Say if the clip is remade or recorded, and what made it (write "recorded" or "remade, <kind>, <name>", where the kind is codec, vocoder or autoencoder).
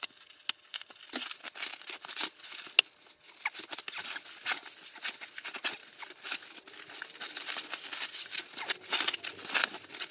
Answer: recorded